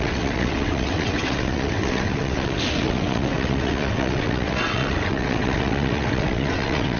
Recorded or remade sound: remade